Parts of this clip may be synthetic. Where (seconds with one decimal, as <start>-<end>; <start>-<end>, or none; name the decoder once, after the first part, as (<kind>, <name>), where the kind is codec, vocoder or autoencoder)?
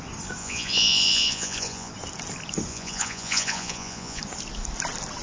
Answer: 0.4-1.9 (vocoder, Vocos); 2.7-4.2